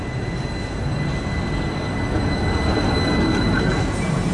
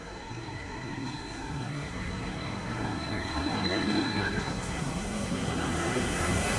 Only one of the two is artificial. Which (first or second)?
second